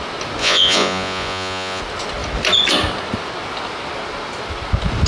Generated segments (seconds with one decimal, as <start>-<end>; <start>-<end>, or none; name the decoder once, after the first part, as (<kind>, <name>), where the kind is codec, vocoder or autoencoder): 0.4-1.8 (vocoder, Vocos)